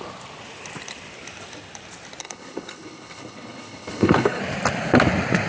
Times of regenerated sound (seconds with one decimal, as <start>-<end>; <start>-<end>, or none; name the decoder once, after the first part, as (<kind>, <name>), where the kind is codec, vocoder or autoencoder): 2.2-4.4 (codec, HILCodec)